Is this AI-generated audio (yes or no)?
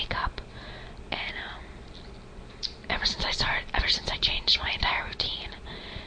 no